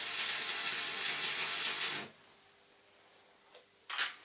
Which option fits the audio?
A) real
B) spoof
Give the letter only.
A